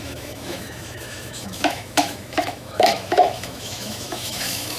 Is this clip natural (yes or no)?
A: no